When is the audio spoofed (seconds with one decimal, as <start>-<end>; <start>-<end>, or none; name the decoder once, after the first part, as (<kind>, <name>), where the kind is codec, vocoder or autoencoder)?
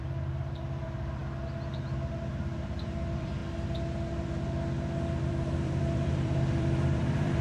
0.0-1.2 (vocoder, BigVGAN v2); 2.4-3.4; 5.2-7.4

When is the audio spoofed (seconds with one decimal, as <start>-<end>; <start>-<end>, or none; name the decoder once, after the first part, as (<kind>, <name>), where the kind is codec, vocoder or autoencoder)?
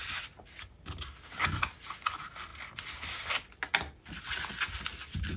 none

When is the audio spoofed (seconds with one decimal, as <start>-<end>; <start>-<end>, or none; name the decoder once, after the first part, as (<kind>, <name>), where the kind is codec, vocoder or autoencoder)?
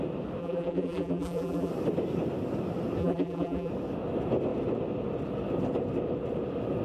0.4-1.7 (vocoder, BigVGAN v2); 3.0-3.7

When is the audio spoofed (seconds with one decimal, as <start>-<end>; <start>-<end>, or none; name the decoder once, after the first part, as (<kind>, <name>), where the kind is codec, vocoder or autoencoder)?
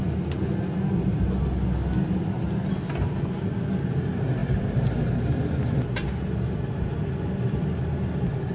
none